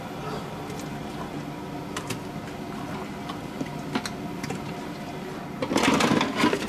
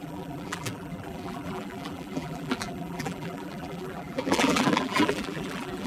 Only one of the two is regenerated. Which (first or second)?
second